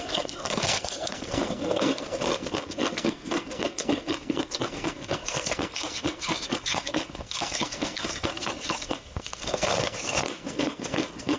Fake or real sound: fake